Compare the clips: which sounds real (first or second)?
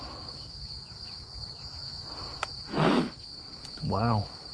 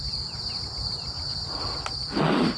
second